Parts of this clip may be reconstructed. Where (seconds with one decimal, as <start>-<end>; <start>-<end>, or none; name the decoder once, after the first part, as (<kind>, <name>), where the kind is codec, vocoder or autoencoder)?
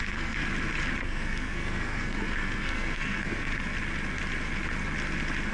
0.0-0.4 (codec, SNAC); 1.0-3.5